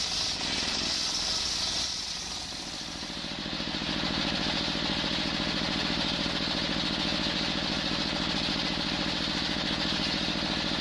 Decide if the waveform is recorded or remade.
recorded